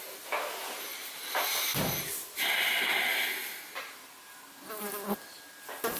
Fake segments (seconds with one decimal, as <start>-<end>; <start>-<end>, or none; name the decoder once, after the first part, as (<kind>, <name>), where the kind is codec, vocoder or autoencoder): none